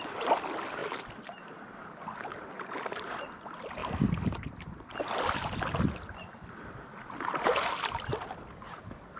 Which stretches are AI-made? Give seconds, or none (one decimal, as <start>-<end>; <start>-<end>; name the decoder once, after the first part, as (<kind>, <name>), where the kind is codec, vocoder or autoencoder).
none